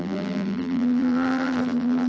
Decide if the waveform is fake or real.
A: fake